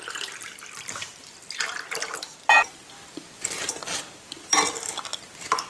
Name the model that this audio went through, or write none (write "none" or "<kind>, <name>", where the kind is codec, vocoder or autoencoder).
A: none